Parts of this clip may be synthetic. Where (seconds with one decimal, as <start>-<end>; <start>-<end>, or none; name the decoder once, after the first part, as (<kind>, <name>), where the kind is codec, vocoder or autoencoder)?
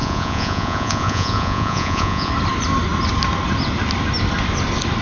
0.0-2.3 (vocoder, Vocos)